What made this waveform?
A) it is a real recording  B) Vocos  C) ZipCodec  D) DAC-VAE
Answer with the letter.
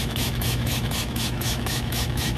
D